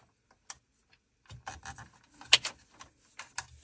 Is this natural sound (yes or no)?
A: yes